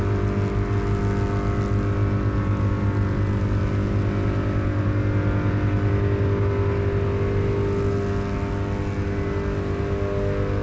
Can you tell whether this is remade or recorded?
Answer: recorded